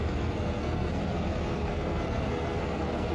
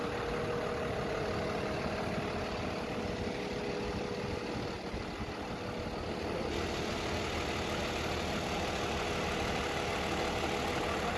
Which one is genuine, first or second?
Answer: second